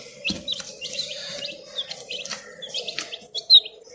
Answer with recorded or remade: recorded